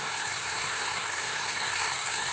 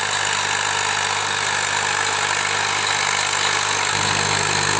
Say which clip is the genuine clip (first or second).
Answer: second